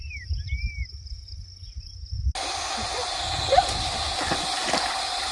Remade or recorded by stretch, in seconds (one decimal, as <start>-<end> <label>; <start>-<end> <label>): 0.0-5.3 recorded